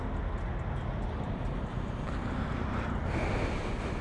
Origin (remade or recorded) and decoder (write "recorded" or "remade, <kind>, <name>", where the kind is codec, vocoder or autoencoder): recorded